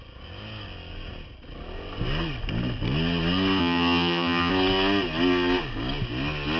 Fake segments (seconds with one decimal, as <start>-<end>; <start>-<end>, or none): 3.6-4.5